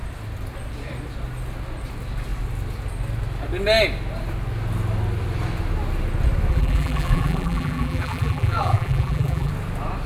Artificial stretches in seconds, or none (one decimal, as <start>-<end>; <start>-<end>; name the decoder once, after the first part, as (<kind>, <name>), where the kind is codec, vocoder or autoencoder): 6.5-9.5 (vocoder, BigVGAN v2)

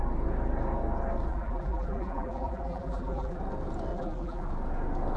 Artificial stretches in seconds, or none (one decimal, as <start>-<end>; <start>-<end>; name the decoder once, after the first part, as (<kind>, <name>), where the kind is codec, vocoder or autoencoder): 1.3-3.4 (vocoder, BigVGAN v2); 3.9-4.5

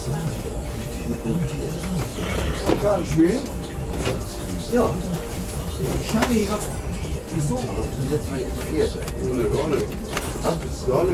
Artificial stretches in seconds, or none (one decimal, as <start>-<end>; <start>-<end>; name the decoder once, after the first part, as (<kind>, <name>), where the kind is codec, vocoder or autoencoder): 2.1-2.6 (vocoder, BigVGAN v2); 6.4-9.8

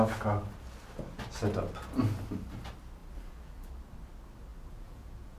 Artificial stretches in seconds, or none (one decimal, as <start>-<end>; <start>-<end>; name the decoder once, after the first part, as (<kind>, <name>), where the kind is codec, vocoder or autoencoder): 3.0-3.7 (vocoder, BigVGAN v2); 4.5-5.4

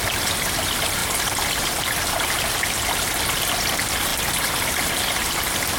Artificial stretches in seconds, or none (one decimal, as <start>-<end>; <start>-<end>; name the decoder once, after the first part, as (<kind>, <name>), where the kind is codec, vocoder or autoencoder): none

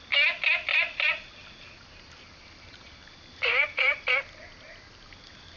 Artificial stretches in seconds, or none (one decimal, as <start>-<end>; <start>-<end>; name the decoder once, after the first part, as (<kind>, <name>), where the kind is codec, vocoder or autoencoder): 0.7-4.1 (vocoder, BigVGAN v2)